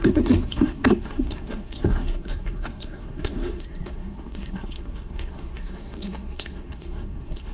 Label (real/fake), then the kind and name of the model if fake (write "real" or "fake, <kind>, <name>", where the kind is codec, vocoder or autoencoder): fake, codec, SNAC